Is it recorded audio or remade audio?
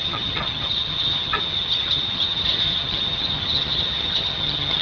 remade